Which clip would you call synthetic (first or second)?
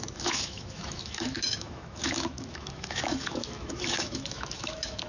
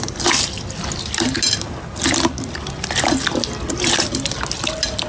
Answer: first